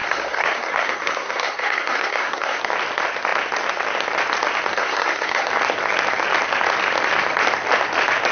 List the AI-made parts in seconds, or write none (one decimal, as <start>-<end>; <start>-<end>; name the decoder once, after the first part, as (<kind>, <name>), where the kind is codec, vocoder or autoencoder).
0.0-2.6 (codec, SNAC); 4.7-5.5